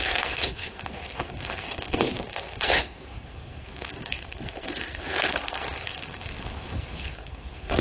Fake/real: fake